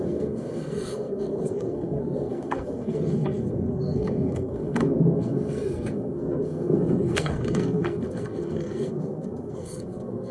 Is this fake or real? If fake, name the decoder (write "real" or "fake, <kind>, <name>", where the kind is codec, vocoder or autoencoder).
fake, codec, SNAC